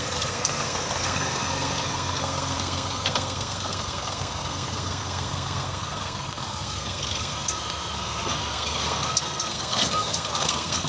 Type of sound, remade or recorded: remade